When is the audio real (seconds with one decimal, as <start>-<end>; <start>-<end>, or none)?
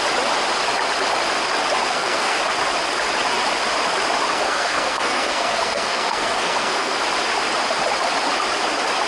0.0-1.8; 2.4-4.3; 7.0-9.1